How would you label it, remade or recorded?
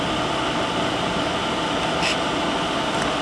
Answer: recorded